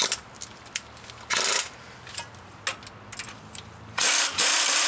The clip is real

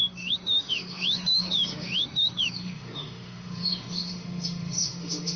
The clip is fake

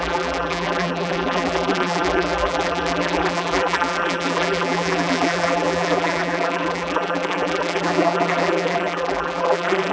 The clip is fake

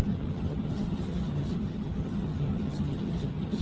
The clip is fake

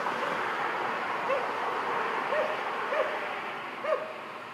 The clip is real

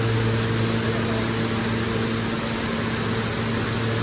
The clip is real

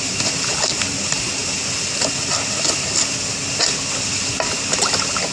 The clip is real